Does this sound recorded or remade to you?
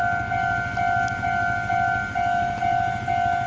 recorded